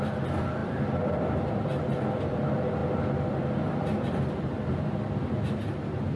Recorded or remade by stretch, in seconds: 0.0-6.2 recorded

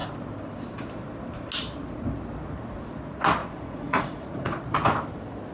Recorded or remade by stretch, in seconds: 0.0-3.4 recorded; 3.4-4.6 remade; 4.6-5.5 recorded

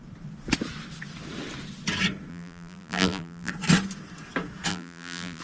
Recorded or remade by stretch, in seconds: 0.0-2.3 recorded; 2.3-3.5 remade; 3.5-4.7 recorded; 4.7-5.4 remade

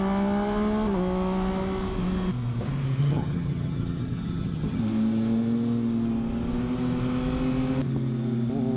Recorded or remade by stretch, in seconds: 0.0-3.0 recorded; 3.0-4.8 remade; 4.8-8.8 recorded

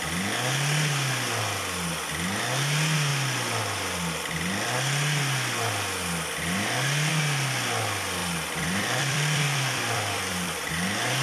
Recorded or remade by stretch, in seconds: 0.0-8.2 recorded; 8.2-10.7 remade; 10.7-11.2 recorded

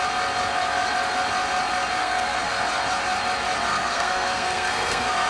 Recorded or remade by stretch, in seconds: 0.0-2.0 recorded; 2.0-2.5 remade; 2.5-3.7 recorded; 3.7-5.3 remade

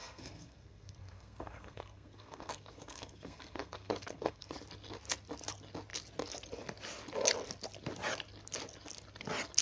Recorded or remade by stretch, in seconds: 0.0-4.5 remade; 4.5-9.6 recorded

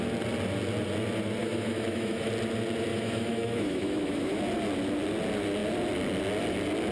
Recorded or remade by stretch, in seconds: 0.0-1.4 recorded; 1.4-2.3 remade; 2.3-2.9 recorded; 2.9-4.4 remade; 4.4-6.9 recorded